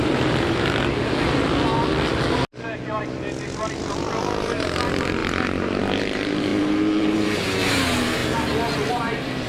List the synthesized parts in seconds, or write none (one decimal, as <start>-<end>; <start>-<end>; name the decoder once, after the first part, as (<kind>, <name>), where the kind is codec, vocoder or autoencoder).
0.0-0.8 (vocoder, BigVGAN v2); 3.8-8.2; 8.9-9.5